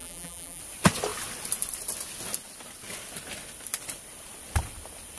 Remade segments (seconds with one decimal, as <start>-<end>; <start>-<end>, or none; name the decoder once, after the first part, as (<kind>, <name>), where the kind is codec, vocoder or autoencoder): 0.0-0.6 (vocoder, BigVGAN v2)